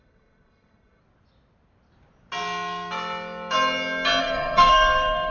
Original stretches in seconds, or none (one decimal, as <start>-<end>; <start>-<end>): 1.0-4.2